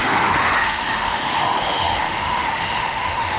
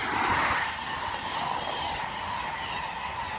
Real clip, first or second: second